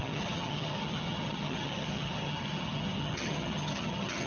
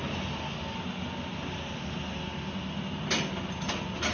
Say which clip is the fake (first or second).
first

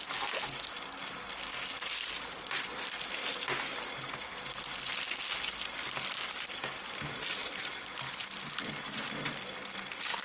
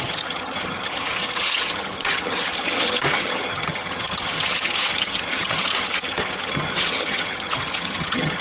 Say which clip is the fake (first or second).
second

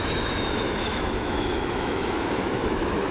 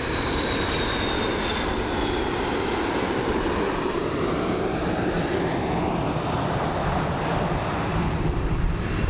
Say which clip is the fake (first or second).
first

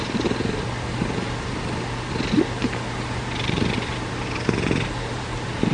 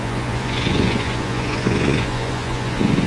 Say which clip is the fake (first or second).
second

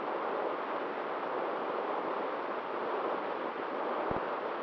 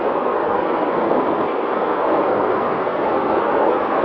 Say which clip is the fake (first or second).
second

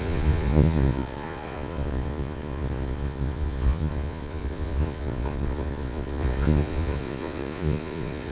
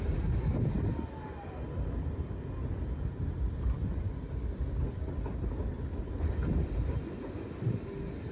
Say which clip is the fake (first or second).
first